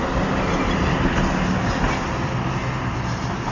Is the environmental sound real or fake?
real